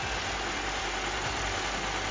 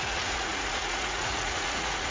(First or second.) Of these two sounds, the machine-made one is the second